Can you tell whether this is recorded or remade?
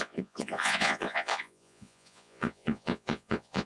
remade